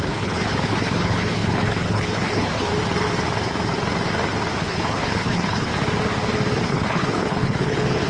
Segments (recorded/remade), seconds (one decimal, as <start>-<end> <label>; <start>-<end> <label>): 0.0-2.7 remade; 2.7-4.6 recorded; 4.6-5.7 remade; 5.7-6.7 recorded; 6.7-8.1 remade